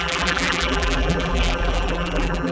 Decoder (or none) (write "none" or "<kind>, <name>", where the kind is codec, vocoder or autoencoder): vocoder, BigVGAN v2